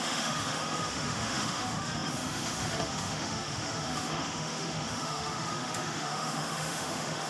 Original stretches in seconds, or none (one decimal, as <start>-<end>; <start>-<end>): none